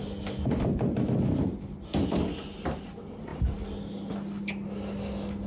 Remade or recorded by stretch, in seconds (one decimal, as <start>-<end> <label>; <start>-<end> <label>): 0.0-5.5 recorded